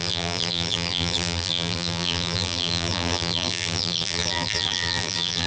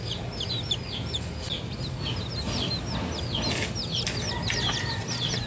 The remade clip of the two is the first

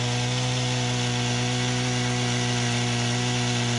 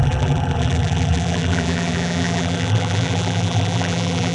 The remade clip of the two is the second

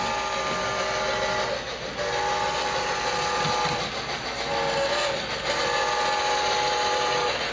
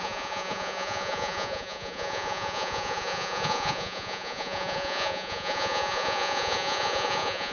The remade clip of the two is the second